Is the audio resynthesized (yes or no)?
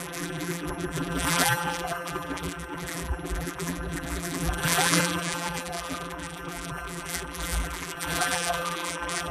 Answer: yes